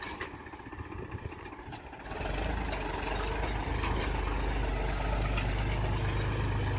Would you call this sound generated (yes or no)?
no